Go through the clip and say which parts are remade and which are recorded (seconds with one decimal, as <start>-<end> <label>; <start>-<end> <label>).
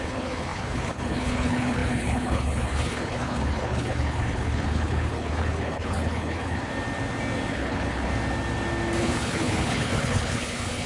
0.0-6.7 remade; 6.7-7.5 recorded; 7.5-8.1 remade; 8.1-9.0 recorded; 9.0-10.9 remade